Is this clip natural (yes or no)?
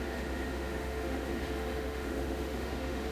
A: no